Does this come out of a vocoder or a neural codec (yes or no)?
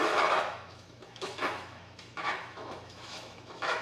yes